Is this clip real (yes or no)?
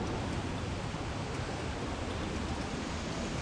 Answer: yes